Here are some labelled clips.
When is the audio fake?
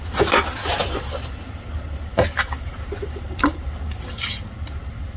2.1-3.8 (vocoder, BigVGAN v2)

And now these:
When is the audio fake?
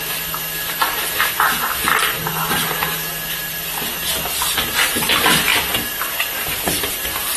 none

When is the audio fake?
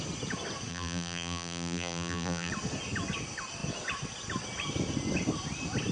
0.7-2.5 (vocoder, BigVGAN v2)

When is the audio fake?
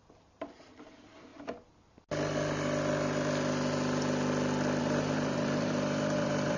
0.0-1.3 (vocoder, BigVGAN v2); 4.8-6.6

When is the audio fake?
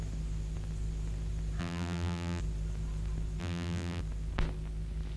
1.6-2.4 (vocoder, BigVGAN v2); 3.4-4.0